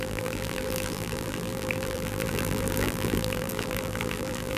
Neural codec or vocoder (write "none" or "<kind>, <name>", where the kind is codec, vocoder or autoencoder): vocoder, BigVGAN v2